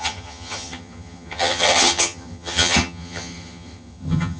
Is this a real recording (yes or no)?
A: no